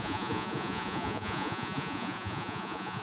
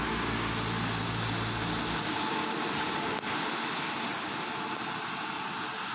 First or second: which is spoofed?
first